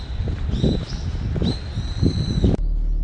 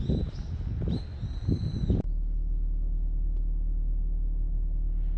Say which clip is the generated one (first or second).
first